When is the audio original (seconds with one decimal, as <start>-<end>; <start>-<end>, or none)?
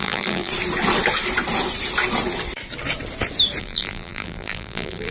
0.5-3.6